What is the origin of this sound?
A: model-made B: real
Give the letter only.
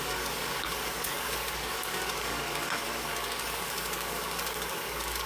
A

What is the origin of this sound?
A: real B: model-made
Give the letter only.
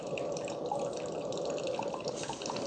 A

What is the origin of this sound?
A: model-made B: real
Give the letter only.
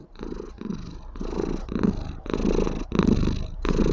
B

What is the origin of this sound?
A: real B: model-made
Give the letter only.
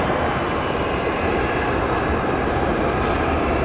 A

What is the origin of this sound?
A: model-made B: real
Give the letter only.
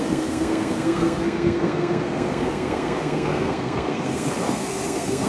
A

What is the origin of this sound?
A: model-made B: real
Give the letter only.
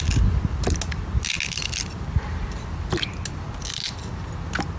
B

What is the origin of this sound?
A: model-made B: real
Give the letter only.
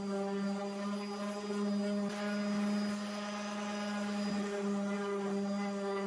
B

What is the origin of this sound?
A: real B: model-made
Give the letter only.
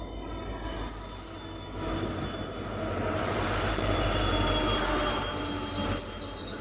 A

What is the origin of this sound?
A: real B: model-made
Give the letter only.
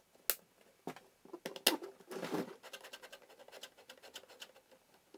A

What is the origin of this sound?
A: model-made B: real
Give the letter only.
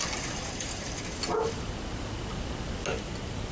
B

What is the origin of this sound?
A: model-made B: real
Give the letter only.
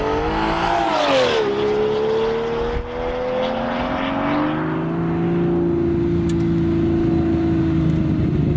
B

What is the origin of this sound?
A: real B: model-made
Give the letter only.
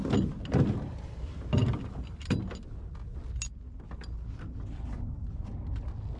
A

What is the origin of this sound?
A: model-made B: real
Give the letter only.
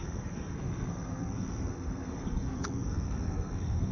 A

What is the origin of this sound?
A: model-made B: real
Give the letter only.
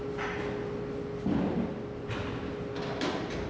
B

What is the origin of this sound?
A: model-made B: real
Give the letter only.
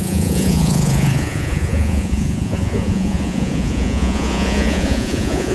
A